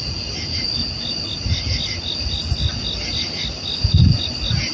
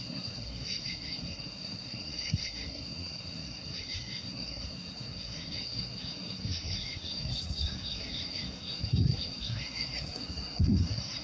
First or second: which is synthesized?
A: second